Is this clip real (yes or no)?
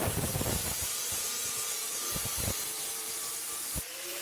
no